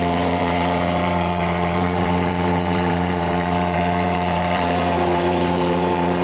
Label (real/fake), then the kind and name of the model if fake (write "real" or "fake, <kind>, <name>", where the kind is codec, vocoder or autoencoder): fake, vocoder, BigVGAN v2